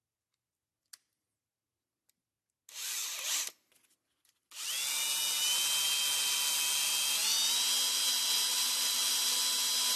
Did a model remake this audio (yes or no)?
no